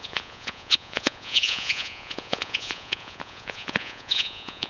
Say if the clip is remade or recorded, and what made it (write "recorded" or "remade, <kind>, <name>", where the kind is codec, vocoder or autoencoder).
remade, vocoder, Vocos